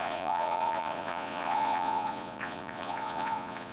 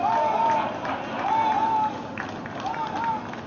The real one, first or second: second